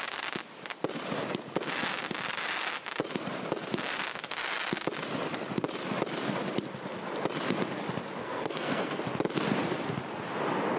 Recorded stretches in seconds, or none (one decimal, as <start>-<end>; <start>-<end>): 0.0-8.2; 9.0-10.8